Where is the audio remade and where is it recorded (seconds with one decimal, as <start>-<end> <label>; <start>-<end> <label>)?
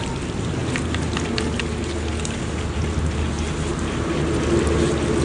0.0-5.2 recorded